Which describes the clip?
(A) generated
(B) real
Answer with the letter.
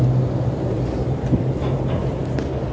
B